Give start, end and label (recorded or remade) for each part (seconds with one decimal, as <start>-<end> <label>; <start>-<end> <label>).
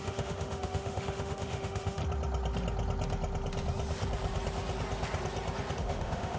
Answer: 0.0-2.0 remade; 2.0-5.8 recorded; 5.8-6.4 remade